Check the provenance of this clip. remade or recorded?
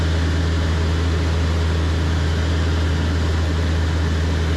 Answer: recorded